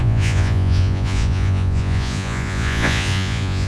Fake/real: fake